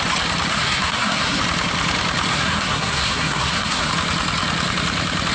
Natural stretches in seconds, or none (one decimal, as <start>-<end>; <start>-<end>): 0.0-0.5; 1.4-2.3; 3.9-5.3